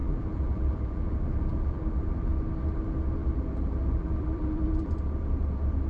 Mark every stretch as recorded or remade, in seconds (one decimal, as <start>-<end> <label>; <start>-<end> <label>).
0.0-2.3 remade; 2.3-3.2 recorded; 3.2-4.9 remade; 4.9-5.9 recorded